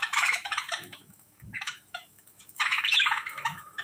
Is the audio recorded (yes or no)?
no